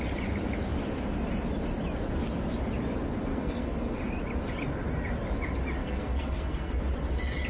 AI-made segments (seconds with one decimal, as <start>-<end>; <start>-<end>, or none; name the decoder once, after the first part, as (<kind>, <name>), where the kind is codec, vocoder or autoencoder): 3.3-4.0 (codec, SNAC); 5.8-6.7